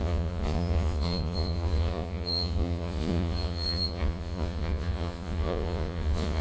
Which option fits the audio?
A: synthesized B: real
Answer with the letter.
A